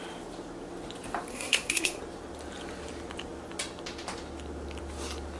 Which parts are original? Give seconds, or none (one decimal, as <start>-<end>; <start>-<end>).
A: 0.0-1.3; 2.0-5.4

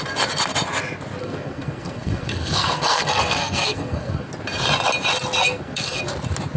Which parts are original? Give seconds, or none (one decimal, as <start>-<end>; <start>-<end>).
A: 0.0-1.2; 4.3-5.4; 6.0-6.6

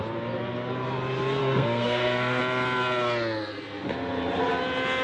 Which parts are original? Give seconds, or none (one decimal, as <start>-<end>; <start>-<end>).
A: 0.0-1.4; 2.4-5.0

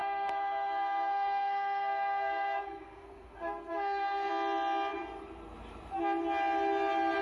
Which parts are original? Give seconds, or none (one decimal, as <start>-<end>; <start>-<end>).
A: 4.3-7.2